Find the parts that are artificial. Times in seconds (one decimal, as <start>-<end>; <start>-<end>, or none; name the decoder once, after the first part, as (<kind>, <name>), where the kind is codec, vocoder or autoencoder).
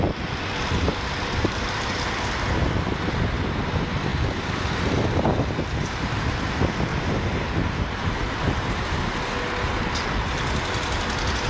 0.9-1.9 (vocoder, BigVGAN v2); 4.1-4.7; 6.9-9.0